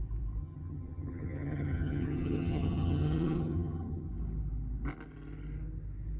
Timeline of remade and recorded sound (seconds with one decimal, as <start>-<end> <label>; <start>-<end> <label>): 0.0-0.4 recorded; 0.4-4.1 remade; 4.1-6.2 recorded